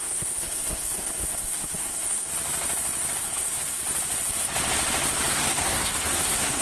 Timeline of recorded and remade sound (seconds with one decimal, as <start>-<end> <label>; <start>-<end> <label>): 0.0-2.3 remade; 2.3-3.2 recorded; 3.2-3.8 remade; 3.8-5.3 recorded; 5.3-6.6 remade

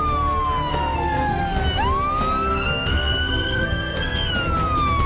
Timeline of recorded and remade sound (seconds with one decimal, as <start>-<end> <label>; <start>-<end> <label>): 0.0-0.7 recorded; 0.7-1.4 remade; 1.4-2.5 recorded; 2.5-4.3 remade; 4.3-5.1 recorded

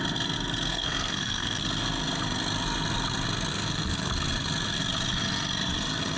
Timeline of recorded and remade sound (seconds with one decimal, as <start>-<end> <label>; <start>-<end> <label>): 0.0-0.7 recorded; 0.7-1.6 remade; 1.6-3.5 recorded; 3.5-4.1 remade; 4.1-6.2 recorded

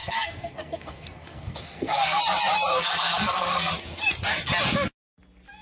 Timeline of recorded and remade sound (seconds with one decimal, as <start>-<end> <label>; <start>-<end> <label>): 0.0-2.2 remade; 2.2-2.7 recorded; 2.7-3.7 remade; 3.7-5.6 recorded

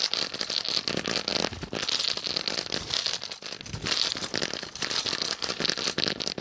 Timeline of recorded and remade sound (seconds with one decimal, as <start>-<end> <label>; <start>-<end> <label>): 0.0-6.4 recorded

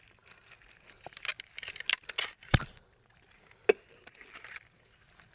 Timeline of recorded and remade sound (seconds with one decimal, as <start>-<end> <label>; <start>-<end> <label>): 0.0-5.3 recorded

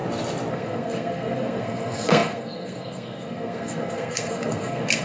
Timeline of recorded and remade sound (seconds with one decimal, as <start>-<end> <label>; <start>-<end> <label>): 0.0-0.5 recorded; 0.5-5.0 remade